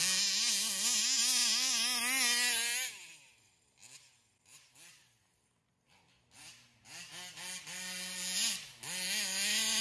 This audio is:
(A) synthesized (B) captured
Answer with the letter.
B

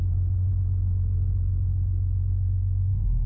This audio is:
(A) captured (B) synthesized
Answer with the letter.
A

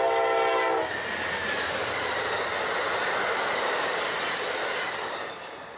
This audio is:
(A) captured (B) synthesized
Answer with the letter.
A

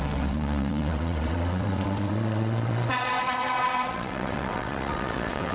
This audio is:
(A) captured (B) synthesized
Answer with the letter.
B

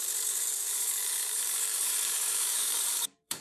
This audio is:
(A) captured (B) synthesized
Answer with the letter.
B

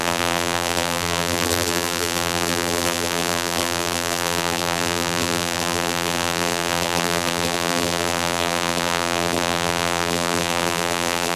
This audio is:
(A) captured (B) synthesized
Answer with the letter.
B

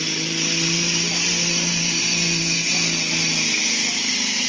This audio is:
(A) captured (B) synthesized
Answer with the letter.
B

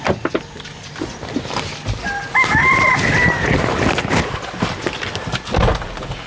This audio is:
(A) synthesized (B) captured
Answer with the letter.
B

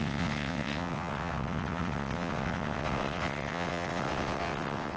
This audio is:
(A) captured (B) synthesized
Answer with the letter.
B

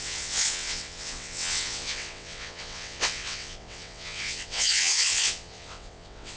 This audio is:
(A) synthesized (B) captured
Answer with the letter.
A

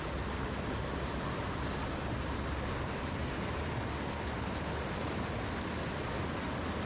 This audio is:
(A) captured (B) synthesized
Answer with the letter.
A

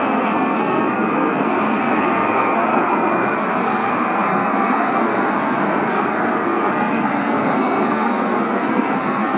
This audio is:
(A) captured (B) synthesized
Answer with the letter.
B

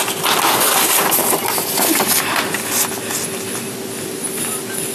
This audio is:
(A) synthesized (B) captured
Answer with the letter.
B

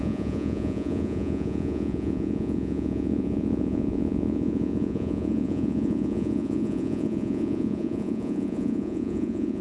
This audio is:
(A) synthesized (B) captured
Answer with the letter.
A